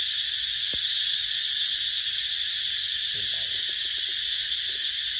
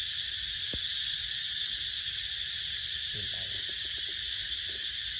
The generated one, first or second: second